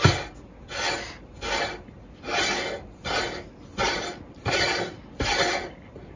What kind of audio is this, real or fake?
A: real